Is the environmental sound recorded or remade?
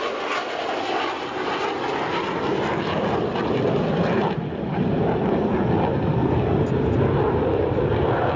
recorded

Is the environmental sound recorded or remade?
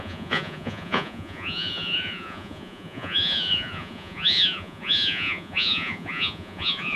remade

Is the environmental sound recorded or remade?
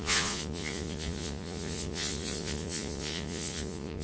remade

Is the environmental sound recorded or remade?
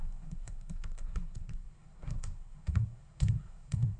remade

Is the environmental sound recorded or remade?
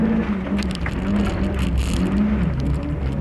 recorded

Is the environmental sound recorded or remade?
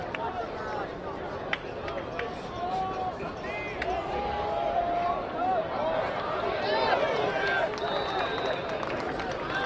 recorded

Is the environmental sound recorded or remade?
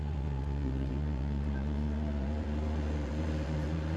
remade